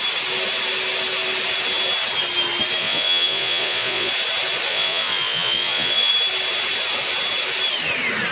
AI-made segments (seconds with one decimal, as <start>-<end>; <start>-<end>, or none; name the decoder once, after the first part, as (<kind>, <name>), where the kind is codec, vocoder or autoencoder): 2.8-4.1 (vocoder, Vocos); 4.7-6.1